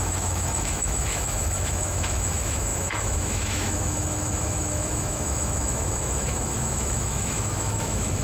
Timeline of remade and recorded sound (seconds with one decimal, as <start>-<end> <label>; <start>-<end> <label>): 0.0-8.2 remade